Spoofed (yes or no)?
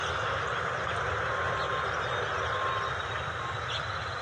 no